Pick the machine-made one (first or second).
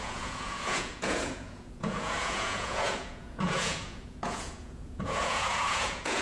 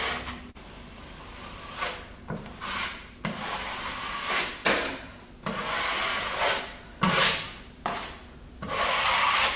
first